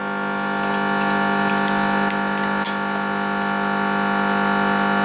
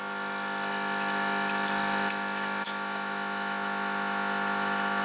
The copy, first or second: second